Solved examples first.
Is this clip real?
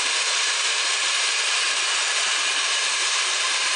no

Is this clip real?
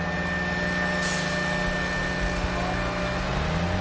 yes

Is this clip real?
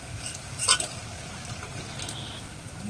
no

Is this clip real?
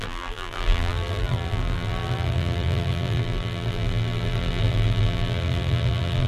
no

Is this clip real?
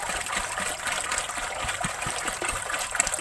yes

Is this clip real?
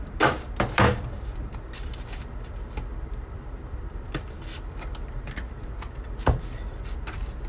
no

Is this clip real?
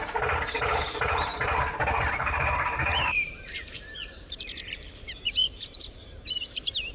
no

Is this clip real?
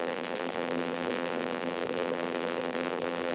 no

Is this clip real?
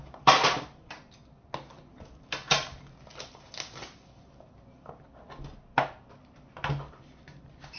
yes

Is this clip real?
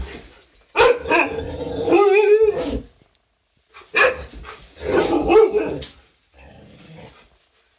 yes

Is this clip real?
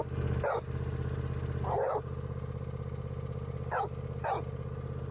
yes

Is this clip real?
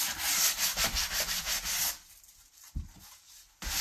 yes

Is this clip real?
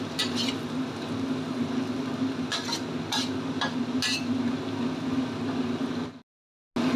yes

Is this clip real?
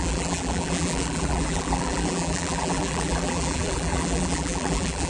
no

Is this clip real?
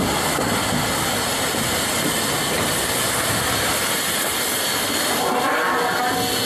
yes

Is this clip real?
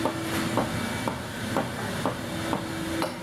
yes